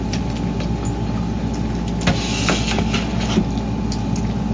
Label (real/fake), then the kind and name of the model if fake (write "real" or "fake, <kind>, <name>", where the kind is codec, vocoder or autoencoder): real